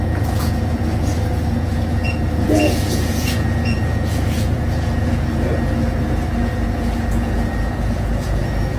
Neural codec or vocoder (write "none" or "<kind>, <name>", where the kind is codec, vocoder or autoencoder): vocoder, Vocos